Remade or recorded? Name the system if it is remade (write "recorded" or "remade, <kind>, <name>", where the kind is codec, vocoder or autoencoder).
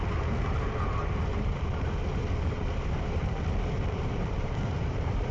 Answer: remade, vocoder, BigVGAN v2